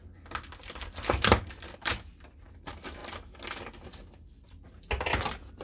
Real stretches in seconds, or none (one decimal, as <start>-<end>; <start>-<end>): 0.0-5.6